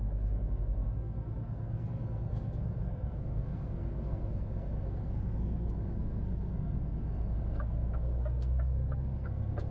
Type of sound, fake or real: fake